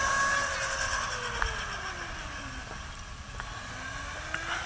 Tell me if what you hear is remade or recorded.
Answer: recorded